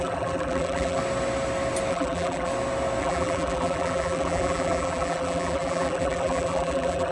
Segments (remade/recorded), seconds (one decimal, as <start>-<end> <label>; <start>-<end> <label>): 0.0-1.0 remade; 1.0-1.9 recorded; 1.9-2.5 remade; 2.5-3.0 recorded; 3.0-7.1 remade